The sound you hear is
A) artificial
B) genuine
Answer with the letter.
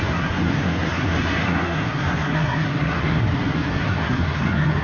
A